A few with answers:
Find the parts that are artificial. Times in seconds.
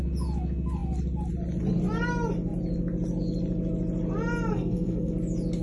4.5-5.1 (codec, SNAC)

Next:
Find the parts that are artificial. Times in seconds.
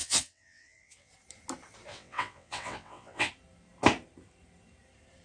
0.0-1.1 (vocoder, WaveNeXt); 1.9-3.3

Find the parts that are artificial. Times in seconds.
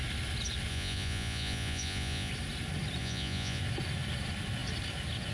0.7-2.3 (vocoder, Vocos); 3.0-3.6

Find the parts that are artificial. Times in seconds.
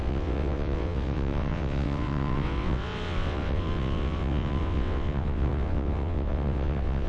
0.0-7.1 (vocoder, WaveNeXt)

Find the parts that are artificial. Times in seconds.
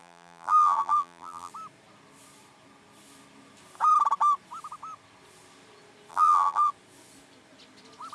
0.0-1.5 (vocoder, BigVGAN v2); 6.1-6.7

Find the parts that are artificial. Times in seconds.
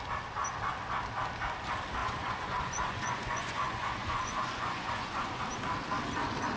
2.0-5.4 (vocoder, Vocos)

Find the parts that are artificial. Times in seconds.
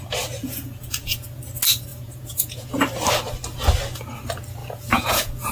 0.4-1.4 (vocoder, Vocos); 1.9-2.7; 4.6-5.5